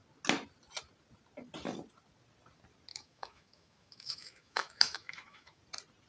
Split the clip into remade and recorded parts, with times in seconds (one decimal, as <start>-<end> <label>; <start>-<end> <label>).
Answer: 0.0-2.9 recorded; 2.9-5.6 remade; 5.6-6.1 recorded